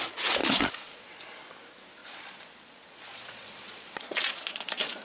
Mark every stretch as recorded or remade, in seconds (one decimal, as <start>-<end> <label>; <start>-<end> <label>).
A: 0.0-0.4 recorded; 0.4-1.2 remade; 1.2-2.0 recorded; 2.0-5.0 remade

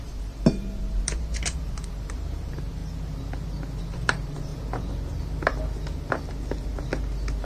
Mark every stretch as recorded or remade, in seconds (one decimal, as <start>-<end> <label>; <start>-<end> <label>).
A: 0.0-2.8 remade; 2.8-3.8 recorded; 3.8-4.5 remade; 4.5-7.4 recorded

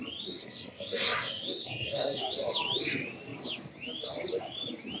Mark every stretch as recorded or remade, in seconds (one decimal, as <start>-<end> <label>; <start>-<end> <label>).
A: 0.0-0.4 recorded; 0.4-2.2 remade; 2.2-5.0 recorded

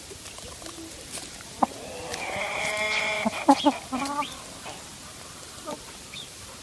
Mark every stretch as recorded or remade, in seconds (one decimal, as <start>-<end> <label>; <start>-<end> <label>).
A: 0.0-2.1 recorded; 2.1-3.6 remade; 3.6-4.9 recorded; 4.9-6.6 remade

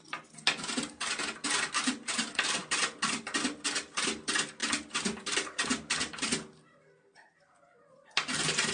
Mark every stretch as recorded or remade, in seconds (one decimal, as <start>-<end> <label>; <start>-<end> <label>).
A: 0.0-8.7 recorded